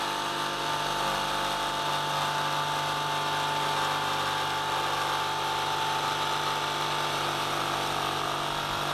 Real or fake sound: real